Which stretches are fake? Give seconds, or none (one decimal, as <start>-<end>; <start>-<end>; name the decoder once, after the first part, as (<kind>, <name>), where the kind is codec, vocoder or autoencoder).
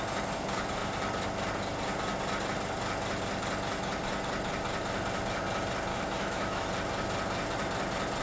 5.9-6.7 (autoencoder, DAC-VAE)